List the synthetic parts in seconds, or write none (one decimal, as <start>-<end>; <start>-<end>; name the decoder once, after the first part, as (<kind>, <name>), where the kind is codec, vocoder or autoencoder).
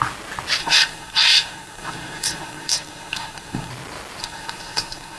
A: 0.6-3.7 (codec, SNAC); 4.2-5.2